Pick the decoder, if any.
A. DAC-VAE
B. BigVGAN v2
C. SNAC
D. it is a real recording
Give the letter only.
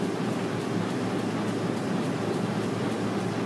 D